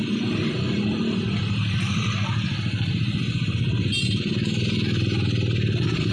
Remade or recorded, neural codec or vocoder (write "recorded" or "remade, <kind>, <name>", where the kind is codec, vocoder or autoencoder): recorded